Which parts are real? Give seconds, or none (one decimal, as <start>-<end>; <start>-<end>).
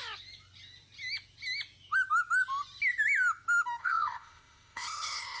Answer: 0.0-3.8